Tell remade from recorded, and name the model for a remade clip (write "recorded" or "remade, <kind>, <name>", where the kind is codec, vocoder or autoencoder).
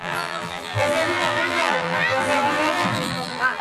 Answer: remade, vocoder, BigVGAN v2